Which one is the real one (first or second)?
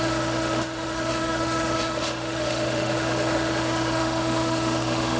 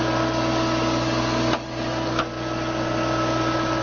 second